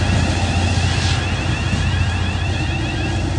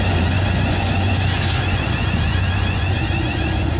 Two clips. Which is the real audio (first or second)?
first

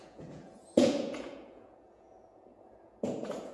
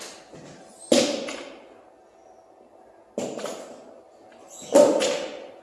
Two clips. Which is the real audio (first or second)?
second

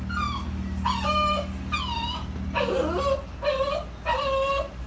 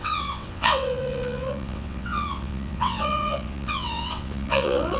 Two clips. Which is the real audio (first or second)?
first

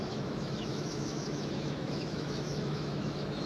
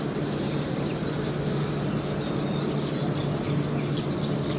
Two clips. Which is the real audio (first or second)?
second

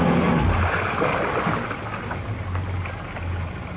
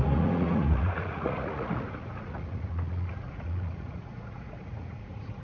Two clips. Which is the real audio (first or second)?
first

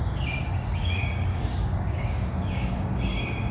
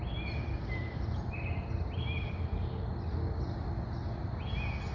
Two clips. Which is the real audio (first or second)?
second